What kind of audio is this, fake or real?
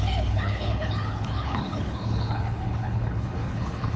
fake